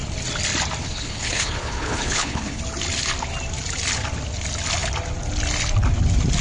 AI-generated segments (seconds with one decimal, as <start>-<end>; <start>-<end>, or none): 0.8-2.6